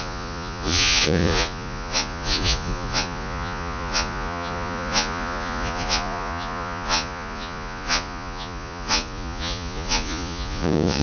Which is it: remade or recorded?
remade